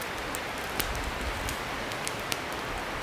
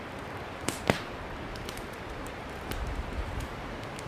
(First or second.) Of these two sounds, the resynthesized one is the second